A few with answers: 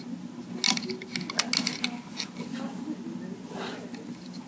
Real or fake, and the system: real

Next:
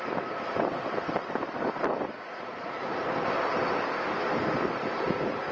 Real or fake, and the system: real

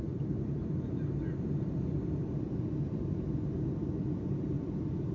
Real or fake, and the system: real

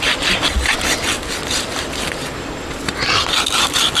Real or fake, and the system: real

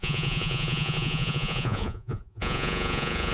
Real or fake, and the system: fake, vocoder, Vocos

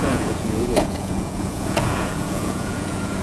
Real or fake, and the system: fake, vocoder, Vocos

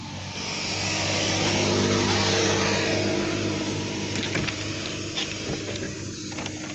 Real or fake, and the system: real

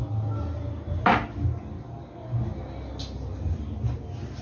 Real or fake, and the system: real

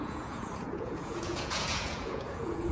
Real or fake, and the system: fake, vocoder, Vocos